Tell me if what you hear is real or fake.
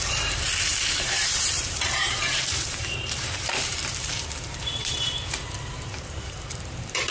fake